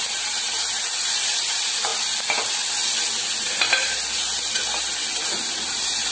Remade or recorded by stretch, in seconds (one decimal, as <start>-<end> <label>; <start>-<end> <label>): 0.0-1.9 remade; 1.9-3.4 recorded; 3.4-4.6 remade; 4.6-5.6 recorded; 5.6-6.1 remade